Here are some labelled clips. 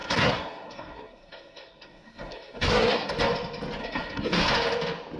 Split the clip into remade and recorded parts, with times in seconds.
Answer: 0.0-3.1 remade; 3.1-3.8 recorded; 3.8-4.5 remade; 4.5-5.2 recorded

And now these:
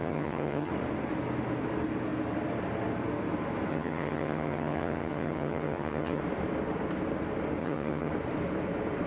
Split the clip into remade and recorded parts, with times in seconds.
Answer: 0.0-0.7 remade; 0.7-3.7 recorded; 3.7-6.2 remade; 6.2-7.6 recorded; 7.6-8.1 remade; 8.1-9.1 recorded

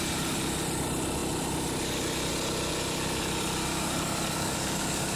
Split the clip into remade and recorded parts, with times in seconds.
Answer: 0.0-3.7 recorded; 3.7-5.2 remade

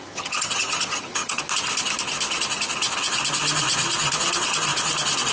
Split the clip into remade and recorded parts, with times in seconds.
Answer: 0.0-1.4 remade; 1.4-5.3 recorded